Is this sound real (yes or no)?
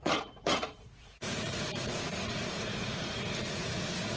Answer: no